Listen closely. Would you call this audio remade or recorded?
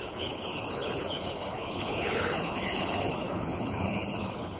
remade